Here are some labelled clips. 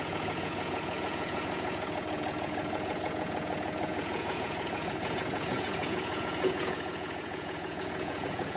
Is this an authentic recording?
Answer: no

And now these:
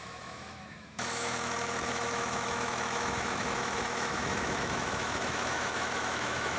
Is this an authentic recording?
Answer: no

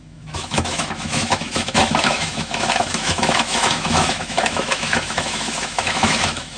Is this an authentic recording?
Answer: no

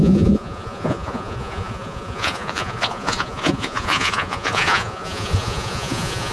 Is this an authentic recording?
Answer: no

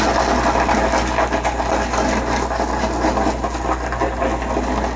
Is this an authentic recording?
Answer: yes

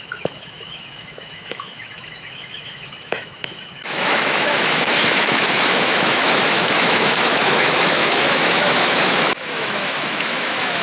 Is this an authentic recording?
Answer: no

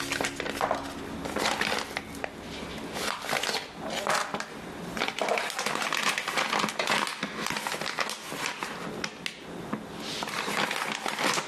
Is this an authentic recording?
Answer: yes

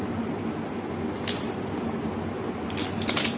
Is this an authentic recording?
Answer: yes